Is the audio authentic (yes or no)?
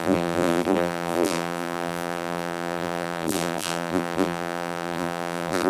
no